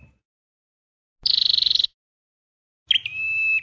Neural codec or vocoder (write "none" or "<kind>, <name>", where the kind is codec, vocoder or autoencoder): none